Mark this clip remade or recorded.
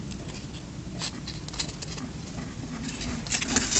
recorded